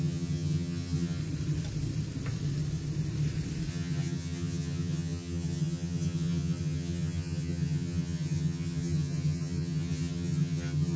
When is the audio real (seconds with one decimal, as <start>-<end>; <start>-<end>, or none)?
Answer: 1.2-3.7